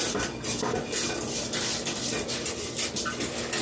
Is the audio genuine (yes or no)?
yes